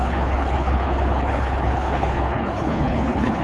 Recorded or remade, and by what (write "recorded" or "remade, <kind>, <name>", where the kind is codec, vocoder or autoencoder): remade, codec, HILCodec